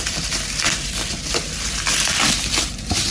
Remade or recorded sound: remade